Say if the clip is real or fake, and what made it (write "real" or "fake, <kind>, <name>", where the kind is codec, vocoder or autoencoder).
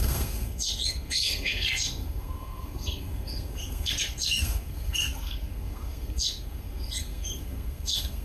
fake, codec, SNAC